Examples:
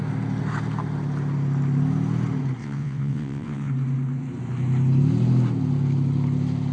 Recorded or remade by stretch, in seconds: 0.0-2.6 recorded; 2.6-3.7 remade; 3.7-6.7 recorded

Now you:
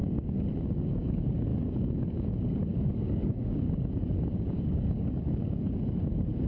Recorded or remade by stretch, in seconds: 0.0-6.5 remade

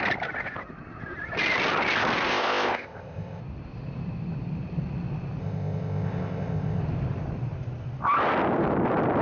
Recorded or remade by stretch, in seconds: 0.0-2.3 recorded; 2.3-3.4 remade; 3.4-5.4 recorded; 5.4-6.8 remade; 6.8-9.2 recorded

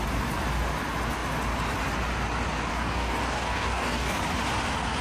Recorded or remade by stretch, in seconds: 0.0-2.7 recorded; 2.7-4.2 remade; 4.2-5.0 recorded

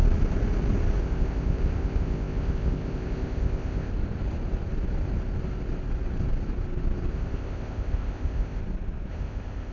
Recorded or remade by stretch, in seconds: 0.0-1.0 recorded; 1.0-3.9 remade; 3.9-7.1 recorded; 7.1-8.6 remade; 8.6-9.1 recorded; 9.1-9.7 remade

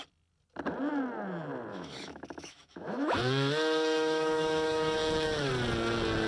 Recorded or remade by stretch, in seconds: 0.0-1.7 recorded; 1.7-5.5 remade; 5.5-6.3 recorded

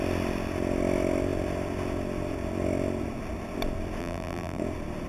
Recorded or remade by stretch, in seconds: 0.0-4.0 recorded; 4.0-4.6 remade; 4.6-5.1 recorded